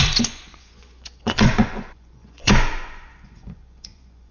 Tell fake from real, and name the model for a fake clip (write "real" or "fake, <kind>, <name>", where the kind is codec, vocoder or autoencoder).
fake, vocoder, Vocos